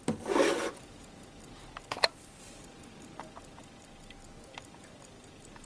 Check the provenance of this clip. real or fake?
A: real